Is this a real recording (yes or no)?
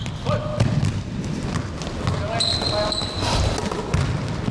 yes